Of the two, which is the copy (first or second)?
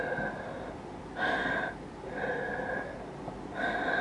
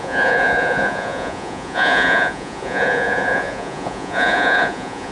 second